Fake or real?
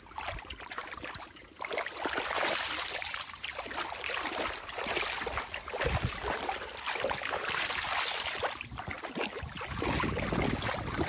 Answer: real